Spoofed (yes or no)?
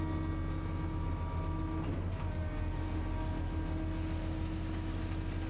no